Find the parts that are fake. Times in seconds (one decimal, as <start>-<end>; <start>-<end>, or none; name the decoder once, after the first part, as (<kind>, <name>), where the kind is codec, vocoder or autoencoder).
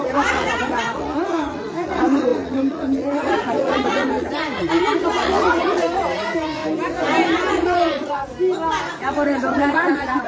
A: 0.0-6.6 (vocoder, Vocos); 7.5-8.3; 8.9-10.3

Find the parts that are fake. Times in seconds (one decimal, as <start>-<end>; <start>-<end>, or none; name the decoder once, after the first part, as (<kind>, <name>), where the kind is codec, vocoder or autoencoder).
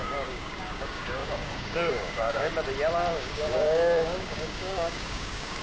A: 0.0-2.5 (codec, DAC); 3.1-5.6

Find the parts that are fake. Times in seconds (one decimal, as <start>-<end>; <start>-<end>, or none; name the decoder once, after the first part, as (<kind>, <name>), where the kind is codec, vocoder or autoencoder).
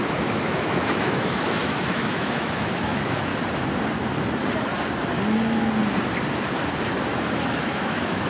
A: 0.0-3.3 (autoencoder, DAC-VAE); 7.5-8.3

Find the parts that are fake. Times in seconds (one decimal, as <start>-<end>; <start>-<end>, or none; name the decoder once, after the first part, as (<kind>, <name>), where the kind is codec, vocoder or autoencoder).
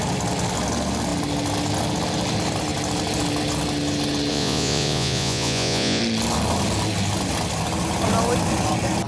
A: 4.3-6.0 (vocoder, Vocos)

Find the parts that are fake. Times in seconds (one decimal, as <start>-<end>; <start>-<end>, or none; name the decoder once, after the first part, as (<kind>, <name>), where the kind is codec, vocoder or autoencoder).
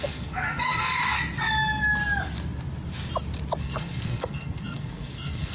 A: 0.0-1.0 (codec, SNAC); 3.6-5.5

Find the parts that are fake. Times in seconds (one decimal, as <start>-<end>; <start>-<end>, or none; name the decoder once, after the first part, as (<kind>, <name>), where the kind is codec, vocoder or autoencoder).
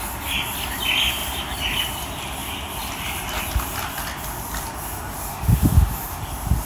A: 5.3-6.2 (autoencoder, DAC-VAE)